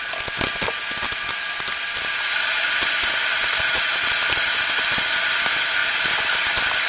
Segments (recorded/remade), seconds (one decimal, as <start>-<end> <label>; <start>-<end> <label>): 0.0-6.9 recorded